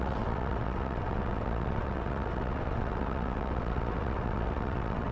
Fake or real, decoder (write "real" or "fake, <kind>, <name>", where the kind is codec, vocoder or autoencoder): fake, vocoder, WaveNeXt